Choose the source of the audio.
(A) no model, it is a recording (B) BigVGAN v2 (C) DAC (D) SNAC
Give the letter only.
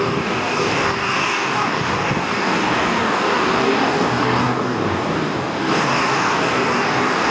C